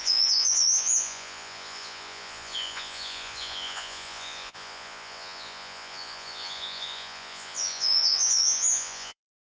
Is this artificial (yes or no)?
yes